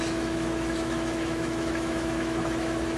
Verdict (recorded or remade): remade